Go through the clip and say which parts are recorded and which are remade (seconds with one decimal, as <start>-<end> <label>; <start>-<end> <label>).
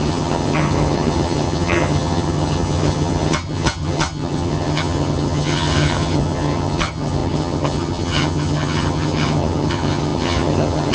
0.0-10.9 remade